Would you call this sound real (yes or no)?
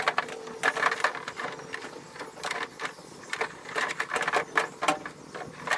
yes